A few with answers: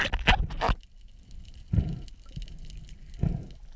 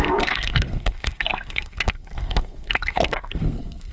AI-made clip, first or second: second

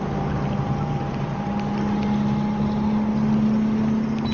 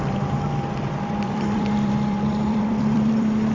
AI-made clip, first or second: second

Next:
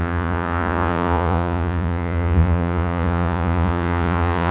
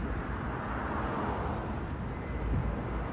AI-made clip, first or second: first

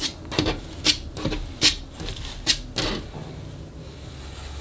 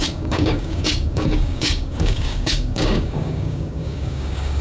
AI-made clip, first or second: second